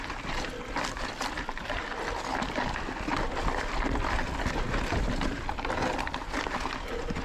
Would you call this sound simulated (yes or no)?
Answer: no